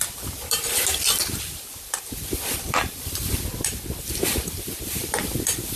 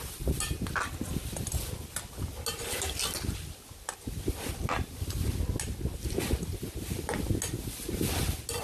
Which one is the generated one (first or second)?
first